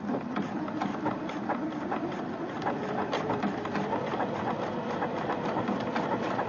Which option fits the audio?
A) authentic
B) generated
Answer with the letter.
A